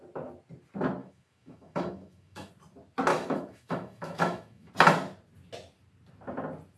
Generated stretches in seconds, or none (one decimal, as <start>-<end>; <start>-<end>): 1.0-2.5; 3.1-4.7